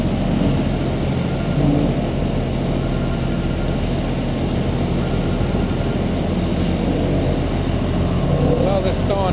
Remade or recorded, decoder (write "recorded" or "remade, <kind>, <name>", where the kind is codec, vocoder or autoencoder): recorded